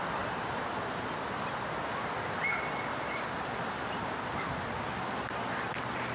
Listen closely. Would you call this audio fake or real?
real